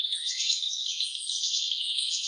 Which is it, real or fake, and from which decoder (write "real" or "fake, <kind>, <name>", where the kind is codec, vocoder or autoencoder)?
fake, codec, SNAC